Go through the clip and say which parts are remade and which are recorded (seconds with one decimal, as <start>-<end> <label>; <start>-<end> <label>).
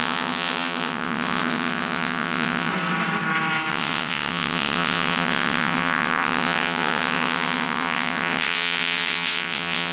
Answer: 0.0-2.7 remade; 2.7-3.7 recorded; 3.7-9.9 remade